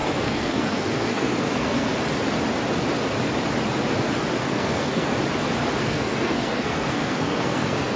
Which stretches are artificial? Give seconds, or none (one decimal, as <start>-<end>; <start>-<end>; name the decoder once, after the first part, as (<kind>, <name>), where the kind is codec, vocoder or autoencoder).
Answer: 0.0-1.9 (codec, SNAC); 4.4-5.1; 5.8-8.0